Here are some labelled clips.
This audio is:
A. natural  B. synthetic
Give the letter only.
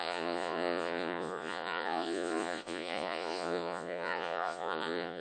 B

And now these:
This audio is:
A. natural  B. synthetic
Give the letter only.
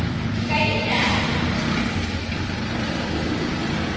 A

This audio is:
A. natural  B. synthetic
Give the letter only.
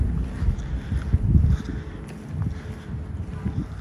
A